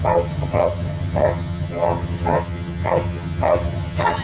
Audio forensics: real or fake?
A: fake